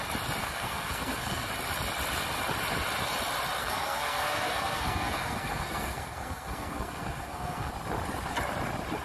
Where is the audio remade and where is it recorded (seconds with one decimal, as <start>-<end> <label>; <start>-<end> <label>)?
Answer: 0.0-0.4 recorded; 0.4-1.5 remade; 1.5-3.6 recorded; 3.6-7.7 remade; 7.7-9.0 recorded